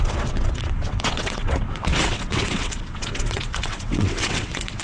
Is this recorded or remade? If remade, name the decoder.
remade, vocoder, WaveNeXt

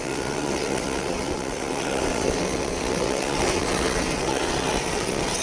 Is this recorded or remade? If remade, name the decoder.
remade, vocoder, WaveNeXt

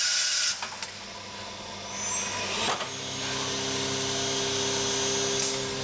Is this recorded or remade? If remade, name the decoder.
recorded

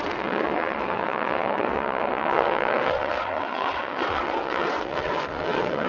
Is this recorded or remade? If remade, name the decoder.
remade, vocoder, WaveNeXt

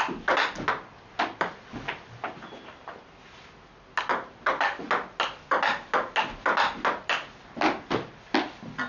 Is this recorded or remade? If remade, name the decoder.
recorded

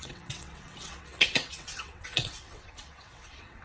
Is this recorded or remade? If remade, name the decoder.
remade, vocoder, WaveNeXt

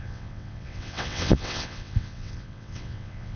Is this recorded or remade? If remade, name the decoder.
remade, vocoder, WaveNeXt